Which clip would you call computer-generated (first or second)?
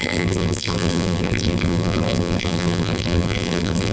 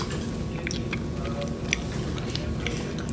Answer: first